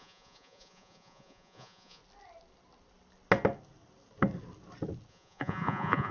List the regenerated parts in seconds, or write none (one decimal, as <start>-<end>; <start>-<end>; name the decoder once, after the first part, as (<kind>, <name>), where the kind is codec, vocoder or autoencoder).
0.0-2.0 (vocoder, Vocos); 5.1-6.1